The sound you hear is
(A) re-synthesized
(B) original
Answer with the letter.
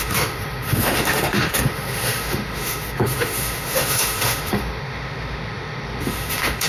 A